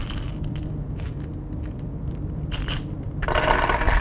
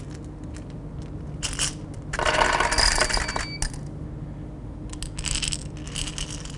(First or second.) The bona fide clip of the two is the second